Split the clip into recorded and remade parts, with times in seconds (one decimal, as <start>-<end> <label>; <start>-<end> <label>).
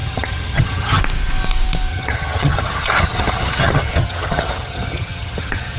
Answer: 0.0-1.0 remade; 1.0-1.9 recorded; 1.9-5.8 remade